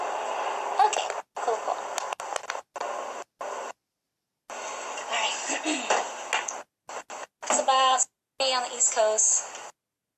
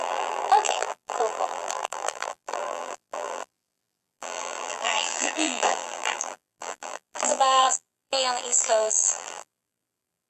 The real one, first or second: first